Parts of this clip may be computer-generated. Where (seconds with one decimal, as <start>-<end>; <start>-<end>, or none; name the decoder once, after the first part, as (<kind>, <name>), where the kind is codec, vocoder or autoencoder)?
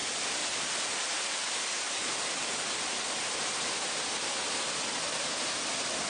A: none